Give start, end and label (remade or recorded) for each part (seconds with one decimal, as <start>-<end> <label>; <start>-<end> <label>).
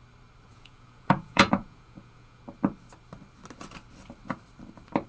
0.0-0.5 recorded; 0.5-2.4 remade; 2.4-5.1 recorded